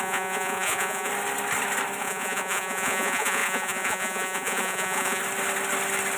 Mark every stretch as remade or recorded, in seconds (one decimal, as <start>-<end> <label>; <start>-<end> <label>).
0.0-1.1 remade; 1.1-2.0 recorded; 2.0-5.2 remade; 5.2-6.2 recorded